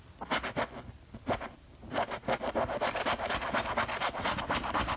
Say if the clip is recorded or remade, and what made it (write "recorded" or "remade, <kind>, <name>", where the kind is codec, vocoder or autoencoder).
recorded